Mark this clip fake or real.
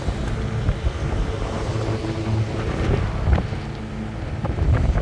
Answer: real